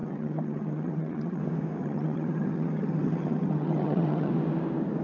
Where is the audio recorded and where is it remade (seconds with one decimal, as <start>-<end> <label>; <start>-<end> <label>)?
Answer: 0.0-1.4 remade; 1.4-1.8 recorded; 1.8-4.3 remade; 4.3-5.0 recorded